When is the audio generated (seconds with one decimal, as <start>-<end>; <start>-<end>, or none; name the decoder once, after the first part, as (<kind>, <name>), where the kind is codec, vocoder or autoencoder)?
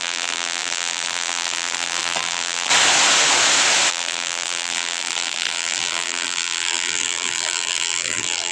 0.0-2.7 (vocoder, BigVGAN v2); 3.9-8.5